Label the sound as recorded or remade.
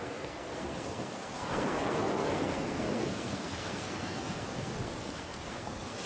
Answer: remade